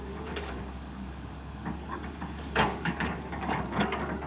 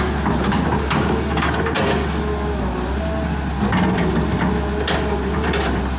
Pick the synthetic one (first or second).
first